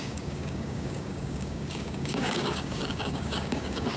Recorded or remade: remade